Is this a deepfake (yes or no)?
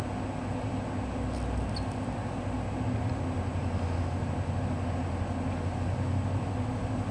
no